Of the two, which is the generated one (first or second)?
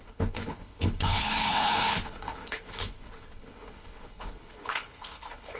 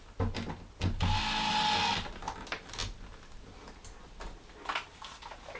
first